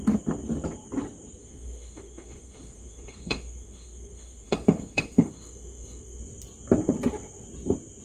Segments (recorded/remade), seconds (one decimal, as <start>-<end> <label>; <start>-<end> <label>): 0.0-1.4 recorded; 1.4-6.2 remade; 6.2-8.0 recorded